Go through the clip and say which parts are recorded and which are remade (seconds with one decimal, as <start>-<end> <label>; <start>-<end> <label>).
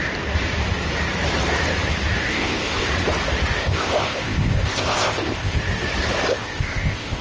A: 0.0-2.3 recorded; 2.3-2.9 remade; 2.9-3.6 recorded; 3.6-5.6 remade; 5.6-6.3 recorded; 6.3-7.2 remade